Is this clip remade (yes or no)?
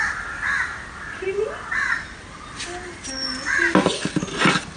no